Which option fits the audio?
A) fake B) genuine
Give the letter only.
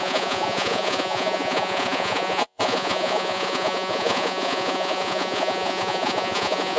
A